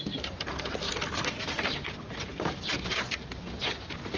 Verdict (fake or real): real